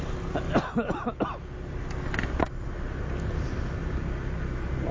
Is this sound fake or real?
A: real